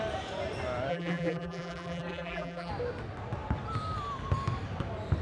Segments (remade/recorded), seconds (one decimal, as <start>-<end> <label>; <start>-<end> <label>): 0.0-0.9 recorded; 0.9-2.7 remade; 2.7-5.2 recorded